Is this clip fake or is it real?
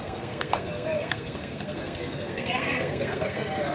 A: fake